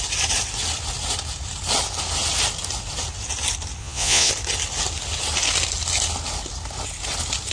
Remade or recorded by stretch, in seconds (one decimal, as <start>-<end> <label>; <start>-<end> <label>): 0.0-3.8 recorded; 3.8-4.3 remade; 4.3-7.5 recorded